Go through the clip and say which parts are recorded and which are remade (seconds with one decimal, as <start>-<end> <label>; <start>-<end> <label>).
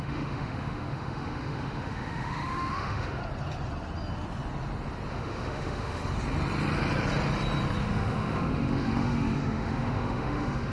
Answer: 0.0-3.2 remade; 3.2-5.1 recorded; 5.1-6.0 remade; 6.0-7.8 recorded; 7.8-10.7 remade